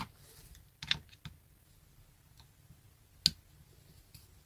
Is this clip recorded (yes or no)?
yes